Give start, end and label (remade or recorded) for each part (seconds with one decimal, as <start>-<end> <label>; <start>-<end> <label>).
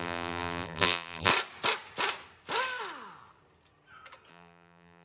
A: 0.0-1.3 remade; 1.3-4.3 recorded; 4.3-5.0 remade